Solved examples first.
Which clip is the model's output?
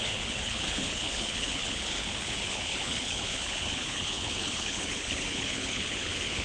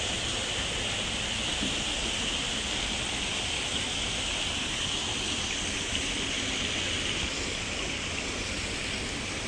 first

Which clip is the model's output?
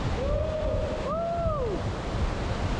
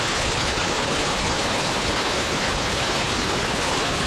second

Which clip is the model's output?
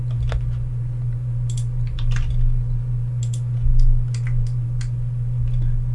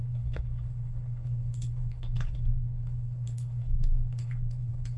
second